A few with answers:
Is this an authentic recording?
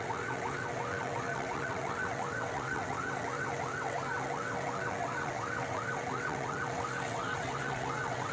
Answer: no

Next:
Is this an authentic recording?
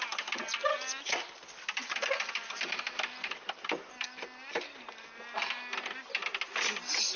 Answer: yes